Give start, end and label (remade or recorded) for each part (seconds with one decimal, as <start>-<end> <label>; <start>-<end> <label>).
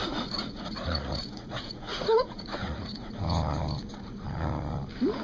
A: 0.0-3.1 remade; 3.1-5.2 recorded